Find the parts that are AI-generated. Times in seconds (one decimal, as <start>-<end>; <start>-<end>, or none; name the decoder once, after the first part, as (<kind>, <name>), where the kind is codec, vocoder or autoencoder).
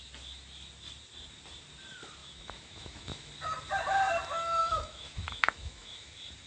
2.2-3.3 (autoencoder, DAC-VAE); 4.6-6.1